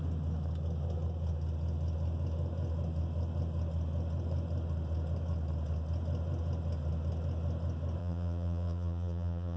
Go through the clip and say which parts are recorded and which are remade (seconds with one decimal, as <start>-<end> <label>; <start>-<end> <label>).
0.0-8.0 recorded; 8.0-9.6 remade

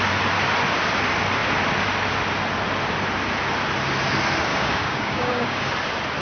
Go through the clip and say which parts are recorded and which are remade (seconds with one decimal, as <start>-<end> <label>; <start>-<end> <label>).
0.0-4.5 recorded; 4.5-5.7 remade; 5.7-6.2 recorded